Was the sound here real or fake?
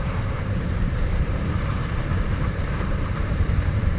fake